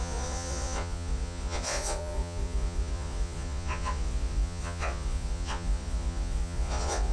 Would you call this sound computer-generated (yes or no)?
yes